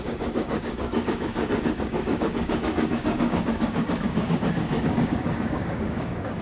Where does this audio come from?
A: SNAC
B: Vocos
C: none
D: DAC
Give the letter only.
D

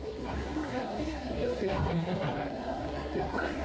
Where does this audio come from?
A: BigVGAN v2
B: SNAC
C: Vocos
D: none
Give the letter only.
B